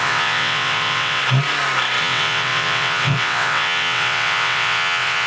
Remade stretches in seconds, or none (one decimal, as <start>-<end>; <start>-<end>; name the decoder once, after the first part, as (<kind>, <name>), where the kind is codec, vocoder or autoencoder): 0.0-1.2 (vocoder, WaveNeXt); 2.0-5.3